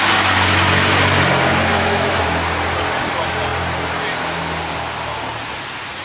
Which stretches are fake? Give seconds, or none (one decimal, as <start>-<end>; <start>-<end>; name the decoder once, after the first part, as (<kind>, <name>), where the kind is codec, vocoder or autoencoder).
1.7-2.2 (autoencoder, DAC-VAE)